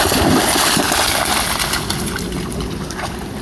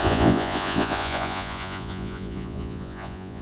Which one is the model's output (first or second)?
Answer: second